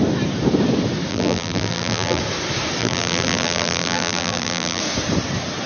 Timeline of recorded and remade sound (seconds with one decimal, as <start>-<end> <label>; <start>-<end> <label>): 0.0-1.1 recorded; 1.1-2.2 remade; 2.2-2.8 recorded; 2.8-4.8 remade; 4.8-5.7 recorded